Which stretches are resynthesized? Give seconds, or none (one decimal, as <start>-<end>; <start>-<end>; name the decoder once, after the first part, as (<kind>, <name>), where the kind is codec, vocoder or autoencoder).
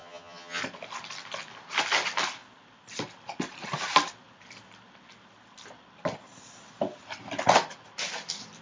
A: 0.0-0.6 (vocoder, HiFi-GAN)